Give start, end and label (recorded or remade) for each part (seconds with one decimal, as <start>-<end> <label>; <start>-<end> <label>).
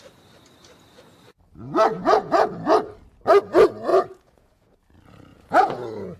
0.0-1.9 recorded; 1.9-2.5 remade; 2.5-3.9 recorded; 3.9-4.8 remade; 4.8-5.3 recorded; 5.3-6.2 remade